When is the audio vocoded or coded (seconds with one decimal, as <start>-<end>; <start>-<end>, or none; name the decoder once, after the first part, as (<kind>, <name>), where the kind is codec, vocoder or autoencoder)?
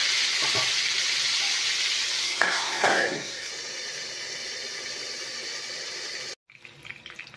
2.2-3.5 (codec, SNAC)